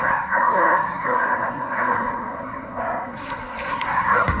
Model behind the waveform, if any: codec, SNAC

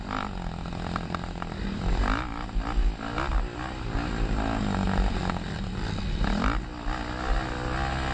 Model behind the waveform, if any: none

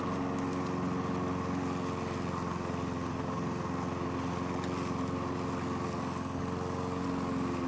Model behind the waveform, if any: none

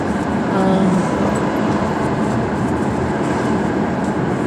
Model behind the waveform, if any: vocoder, BigVGAN v2